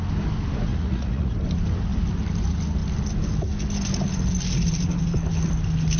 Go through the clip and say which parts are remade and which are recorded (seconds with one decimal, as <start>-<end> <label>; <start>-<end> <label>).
0.0-0.7 recorded; 0.7-1.3 remade; 1.3-6.0 recorded